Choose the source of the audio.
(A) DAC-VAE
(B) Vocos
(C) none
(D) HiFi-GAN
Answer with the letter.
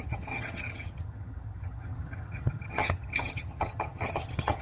D